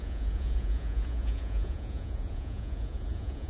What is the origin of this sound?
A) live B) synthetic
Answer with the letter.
B